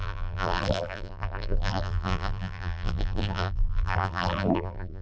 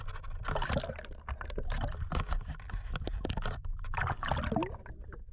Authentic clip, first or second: second